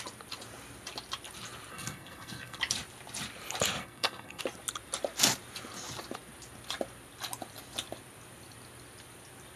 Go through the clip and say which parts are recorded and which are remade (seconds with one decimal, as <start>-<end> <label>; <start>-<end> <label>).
0.0-1.7 recorded; 1.7-2.6 remade; 2.6-3.8 recorded; 3.8-4.4 remade; 4.4-9.6 recorded